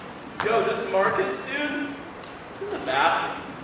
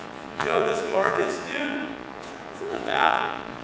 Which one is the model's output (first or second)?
second